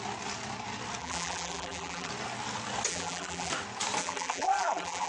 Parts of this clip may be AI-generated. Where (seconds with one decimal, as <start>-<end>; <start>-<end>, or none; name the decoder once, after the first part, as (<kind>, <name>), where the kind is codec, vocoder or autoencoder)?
1.0-2.1 (vocoder, BigVGAN v2); 2.9-3.5; 4.0-5.1